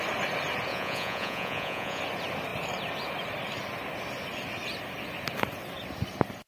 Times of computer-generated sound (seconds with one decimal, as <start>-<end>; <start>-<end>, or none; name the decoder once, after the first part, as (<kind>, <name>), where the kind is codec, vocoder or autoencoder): 0.7-2.0 (vocoder, Vocos)